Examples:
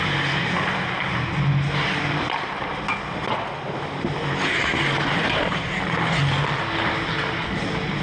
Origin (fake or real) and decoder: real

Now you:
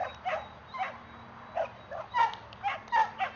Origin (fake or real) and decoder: real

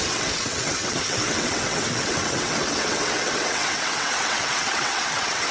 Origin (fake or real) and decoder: fake, vocoder, WaveNeXt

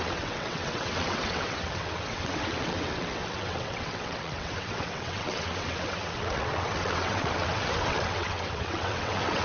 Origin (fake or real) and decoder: fake, vocoder, WaveNeXt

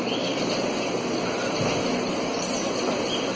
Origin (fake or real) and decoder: real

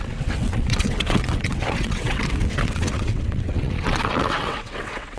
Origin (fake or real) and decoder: fake, vocoder, WaveNeXt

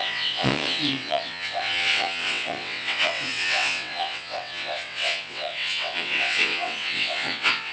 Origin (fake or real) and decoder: fake, vocoder, WaveNeXt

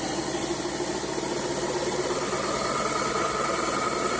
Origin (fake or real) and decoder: real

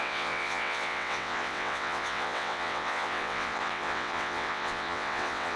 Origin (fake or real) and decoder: fake, vocoder, WaveNeXt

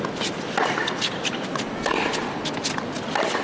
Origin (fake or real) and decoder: real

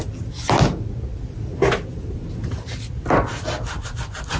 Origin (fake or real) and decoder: real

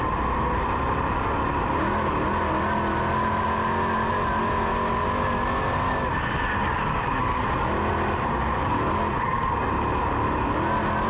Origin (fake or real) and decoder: real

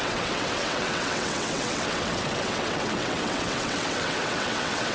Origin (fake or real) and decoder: fake, vocoder, WaveNeXt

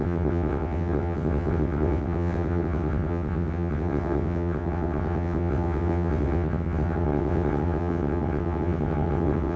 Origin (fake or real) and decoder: fake, vocoder, WaveNeXt